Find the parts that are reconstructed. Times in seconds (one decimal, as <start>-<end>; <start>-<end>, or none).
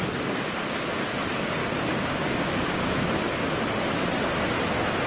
1.6-2.9